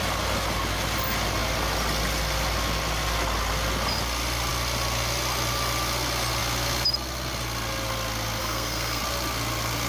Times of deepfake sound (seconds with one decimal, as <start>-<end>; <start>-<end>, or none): 8.4-9.0